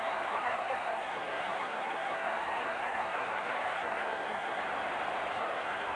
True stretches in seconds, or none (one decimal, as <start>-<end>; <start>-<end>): 4.6-5.3